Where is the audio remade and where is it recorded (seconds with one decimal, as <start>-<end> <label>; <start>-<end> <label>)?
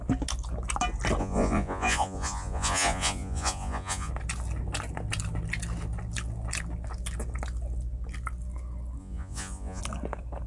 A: 0.0-1.2 recorded; 1.2-4.1 remade; 4.1-9.0 recorded; 9.0-9.8 remade; 9.8-10.5 recorded